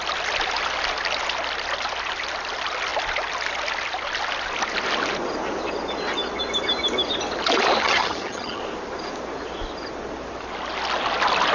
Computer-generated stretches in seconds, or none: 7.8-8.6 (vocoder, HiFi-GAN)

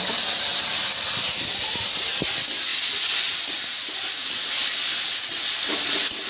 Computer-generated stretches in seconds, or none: none

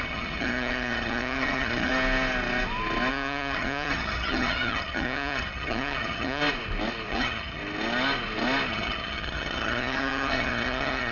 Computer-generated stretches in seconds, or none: 0.0-1.9 (vocoder, HiFi-GAN); 3.1-6.4; 7.1-7.6; 8.7-11.1

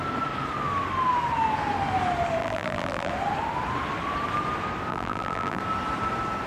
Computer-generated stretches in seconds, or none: 2.4-3.1 (vocoder, BigVGAN v2); 4.9-5.6

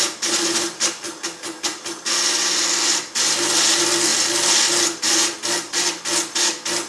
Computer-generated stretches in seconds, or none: none

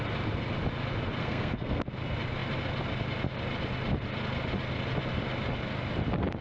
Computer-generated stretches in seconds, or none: 1.2-1.8 (codec, SNAC)

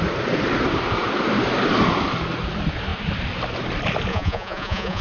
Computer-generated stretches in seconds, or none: 4.1-5.0 (vocoder, Vocos)

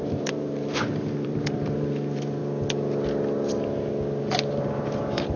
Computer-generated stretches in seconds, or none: 0.0-2.4 (vocoder, BigVGAN v2); 4.2-5.4